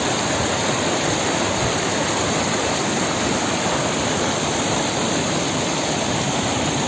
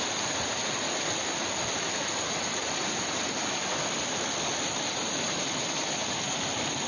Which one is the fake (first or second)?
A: first